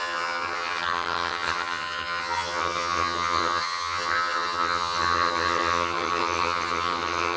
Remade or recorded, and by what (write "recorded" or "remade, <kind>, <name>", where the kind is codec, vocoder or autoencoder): remade, vocoder, HiFi-GAN